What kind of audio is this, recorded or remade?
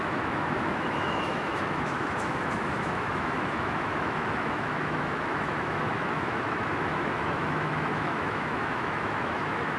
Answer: remade